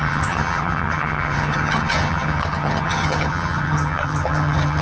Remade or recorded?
remade